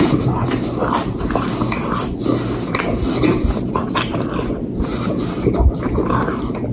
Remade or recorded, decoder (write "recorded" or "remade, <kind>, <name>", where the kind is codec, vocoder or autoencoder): remade, vocoder, BigVGAN v2